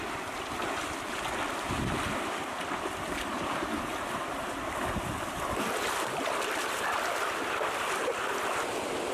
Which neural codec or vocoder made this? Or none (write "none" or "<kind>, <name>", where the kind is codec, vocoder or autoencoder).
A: vocoder, BigVGAN v2